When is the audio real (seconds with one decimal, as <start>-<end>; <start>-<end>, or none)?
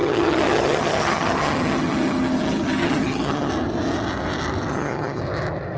3.5-4.7; 5.2-5.8